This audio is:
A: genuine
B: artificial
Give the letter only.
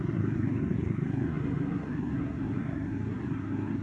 B